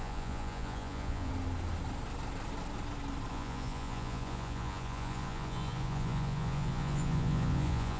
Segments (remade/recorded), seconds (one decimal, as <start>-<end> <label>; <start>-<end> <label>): 0.0-1.3 remade; 1.3-3.3 recorded; 3.3-8.0 remade